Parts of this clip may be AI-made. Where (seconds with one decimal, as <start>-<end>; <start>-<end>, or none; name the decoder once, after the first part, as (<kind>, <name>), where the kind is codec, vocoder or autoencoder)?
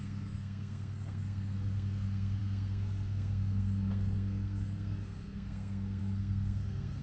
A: 0.0-7.0 (codec, SNAC)